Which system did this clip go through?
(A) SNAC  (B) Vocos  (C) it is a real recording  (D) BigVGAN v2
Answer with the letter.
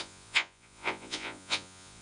B